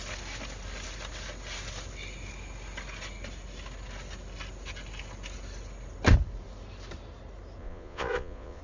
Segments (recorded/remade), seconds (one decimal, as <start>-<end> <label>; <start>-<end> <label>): 0.0-7.6 recorded; 7.6-8.6 remade